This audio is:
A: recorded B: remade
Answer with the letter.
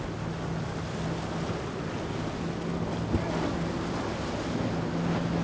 A